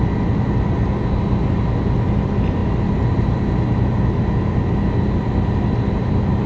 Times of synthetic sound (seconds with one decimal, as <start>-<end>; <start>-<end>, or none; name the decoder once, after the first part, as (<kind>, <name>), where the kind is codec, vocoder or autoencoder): none